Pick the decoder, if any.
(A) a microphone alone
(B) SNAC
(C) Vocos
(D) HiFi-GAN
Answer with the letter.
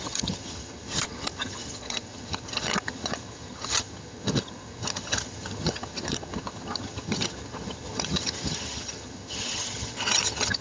D